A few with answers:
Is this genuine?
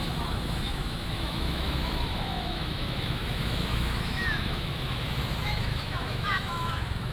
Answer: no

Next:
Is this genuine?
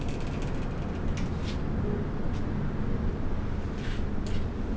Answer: yes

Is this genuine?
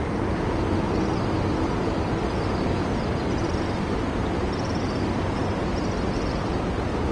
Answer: yes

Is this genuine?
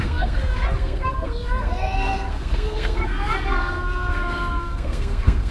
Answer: no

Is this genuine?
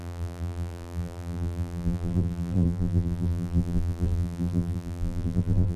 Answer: no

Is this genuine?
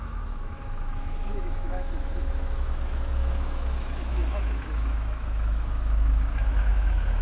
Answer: no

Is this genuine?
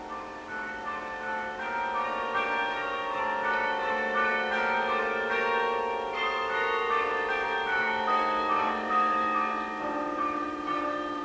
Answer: no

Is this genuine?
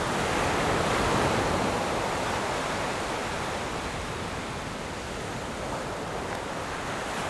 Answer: yes